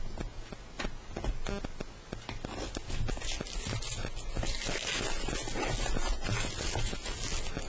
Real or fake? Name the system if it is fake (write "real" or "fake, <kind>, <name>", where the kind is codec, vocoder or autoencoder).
real